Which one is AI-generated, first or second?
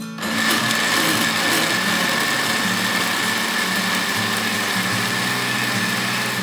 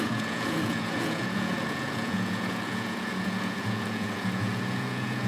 second